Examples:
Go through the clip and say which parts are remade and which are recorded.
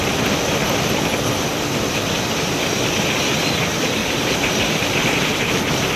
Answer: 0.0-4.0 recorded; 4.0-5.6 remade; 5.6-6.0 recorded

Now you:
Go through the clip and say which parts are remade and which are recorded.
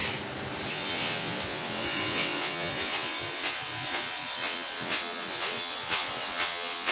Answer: 0.0-0.7 recorded; 0.7-6.9 remade